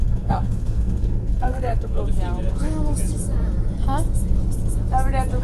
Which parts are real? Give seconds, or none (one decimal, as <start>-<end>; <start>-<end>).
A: 2.0-5.4